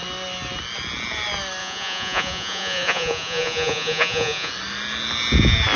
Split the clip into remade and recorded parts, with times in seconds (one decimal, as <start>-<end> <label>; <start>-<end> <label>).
0.0-1.6 recorded; 1.6-4.5 remade; 4.5-5.8 recorded